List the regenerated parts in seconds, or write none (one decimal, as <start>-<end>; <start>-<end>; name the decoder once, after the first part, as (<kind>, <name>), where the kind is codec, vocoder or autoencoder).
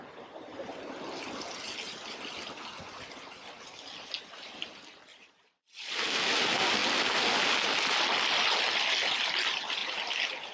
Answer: 5.1-6.0 (vocoder, Vocos)